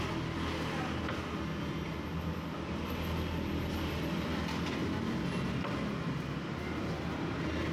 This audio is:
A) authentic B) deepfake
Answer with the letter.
A